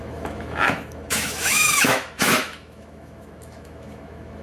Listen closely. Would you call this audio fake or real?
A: fake